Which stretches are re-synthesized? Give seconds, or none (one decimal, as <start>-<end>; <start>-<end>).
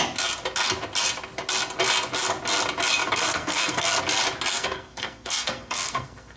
3.0-4.0; 4.5-6.4